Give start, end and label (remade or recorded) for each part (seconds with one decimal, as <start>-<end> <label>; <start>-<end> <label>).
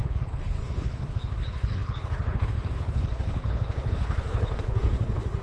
0.0-5.4 remade